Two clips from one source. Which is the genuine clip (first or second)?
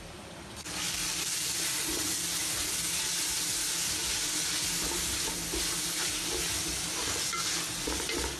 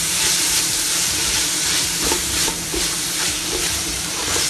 first